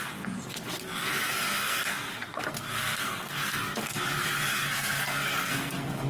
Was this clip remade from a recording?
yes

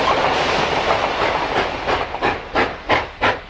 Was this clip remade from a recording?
no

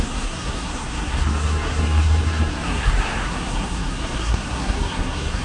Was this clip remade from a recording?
yes